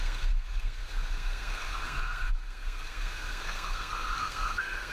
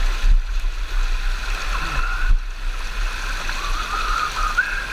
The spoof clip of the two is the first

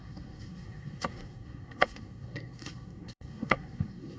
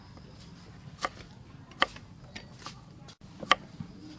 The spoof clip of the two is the first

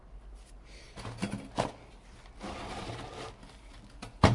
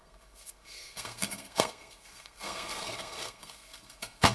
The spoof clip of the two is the second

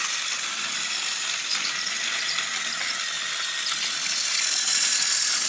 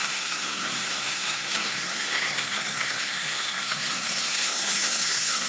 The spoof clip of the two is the second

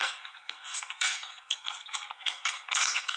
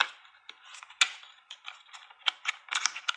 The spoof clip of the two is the first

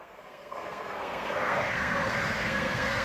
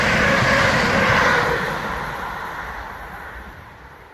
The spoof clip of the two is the first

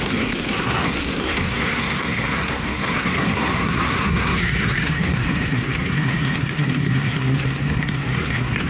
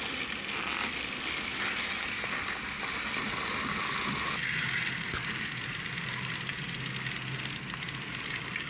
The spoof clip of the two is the first